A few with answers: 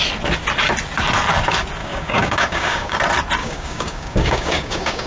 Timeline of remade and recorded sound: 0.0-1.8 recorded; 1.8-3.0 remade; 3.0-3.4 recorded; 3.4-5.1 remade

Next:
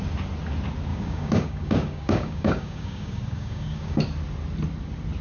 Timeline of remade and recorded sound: 0.0-0.9 recorded; 0.9-4.0 remade; 4.0-5.2 recorded

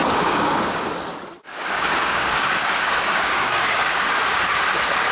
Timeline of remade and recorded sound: 0.0-0.8 remade; 0.8-1.5 recorded; 1.5-4.6 remade; 4.6-5.1 recorded

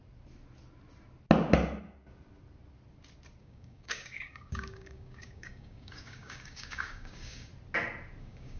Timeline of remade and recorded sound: 0.0-3.4 recorded; 3.4-7.5 remade; 7.5-8.2 recorded; 8.2-8.6 remade